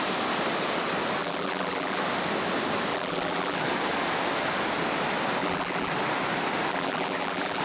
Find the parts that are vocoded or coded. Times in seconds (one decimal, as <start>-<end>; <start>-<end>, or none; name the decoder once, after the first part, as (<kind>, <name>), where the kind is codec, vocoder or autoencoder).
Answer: 1.2-2.0 (vocoder, BigVGAN v2); 2.9-3.6; 5.4-5.9; 6.7-7.6